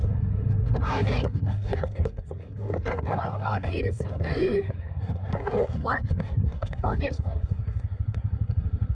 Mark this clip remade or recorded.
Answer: remade